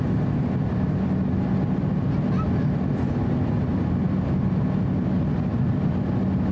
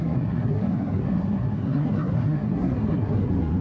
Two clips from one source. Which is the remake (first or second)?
second